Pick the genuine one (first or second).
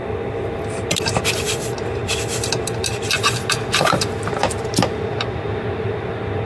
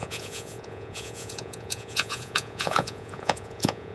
first